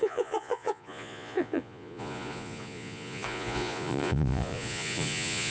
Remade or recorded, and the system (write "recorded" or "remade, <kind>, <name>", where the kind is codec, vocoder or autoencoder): remade, vocoder, Vocos